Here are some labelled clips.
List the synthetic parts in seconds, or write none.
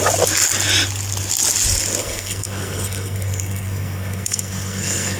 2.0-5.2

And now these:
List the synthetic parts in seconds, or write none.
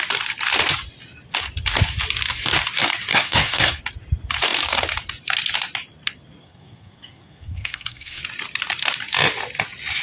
3.1-3.8; 6.4-8.2